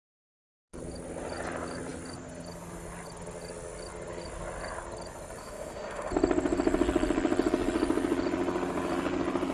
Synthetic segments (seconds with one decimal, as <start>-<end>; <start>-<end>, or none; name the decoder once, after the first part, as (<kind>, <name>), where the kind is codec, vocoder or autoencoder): 5.4-6.1 (autoencoder, DAC-VAE)

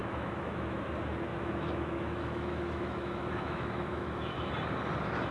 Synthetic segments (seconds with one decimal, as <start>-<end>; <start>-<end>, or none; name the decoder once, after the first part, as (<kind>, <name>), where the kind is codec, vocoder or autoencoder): 0.0-0.8 (autoencoder, DAC-VAE); 1.3-4.5

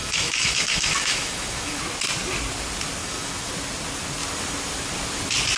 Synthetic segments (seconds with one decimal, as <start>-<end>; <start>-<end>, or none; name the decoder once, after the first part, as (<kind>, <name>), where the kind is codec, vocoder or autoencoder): 0.0-1.8 (autoencoder, DAC-VAE); 3.0-3.5